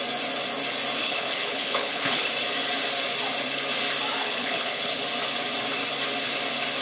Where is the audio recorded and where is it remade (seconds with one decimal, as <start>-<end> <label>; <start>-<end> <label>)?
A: 0.0-1.0 recorded; 1.0-2.3 remade; 2.3-4.2 recorded; 4.2-4.9 remade; 4.9-6.8 recorded